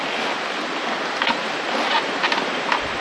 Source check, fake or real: real